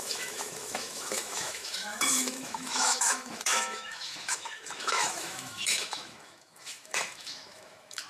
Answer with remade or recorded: remade